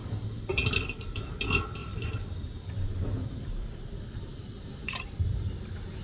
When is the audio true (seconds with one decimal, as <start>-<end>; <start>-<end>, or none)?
1.4-1.8; 5.4-6.0

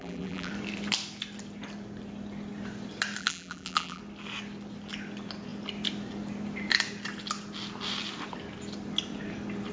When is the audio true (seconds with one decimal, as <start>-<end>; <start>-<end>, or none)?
0.5-3.2; 4.0-9.7